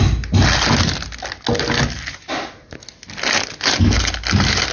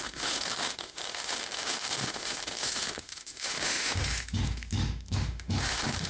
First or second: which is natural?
first